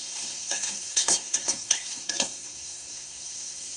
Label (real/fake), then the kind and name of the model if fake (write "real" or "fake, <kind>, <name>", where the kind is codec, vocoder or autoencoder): fake, codec, SNAC